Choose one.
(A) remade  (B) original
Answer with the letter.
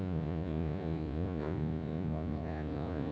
A